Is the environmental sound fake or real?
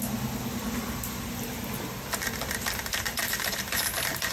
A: real